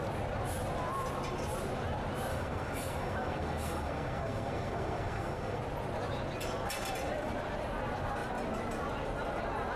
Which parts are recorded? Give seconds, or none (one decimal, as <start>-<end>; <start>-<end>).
0.0-2.3; 5.6-9.8